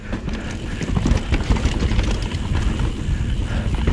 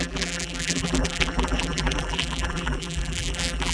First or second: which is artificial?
second